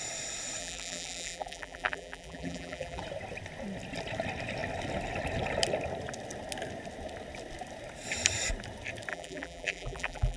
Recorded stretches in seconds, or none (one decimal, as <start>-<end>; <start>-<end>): 0.0-0.6; 3.0-9.1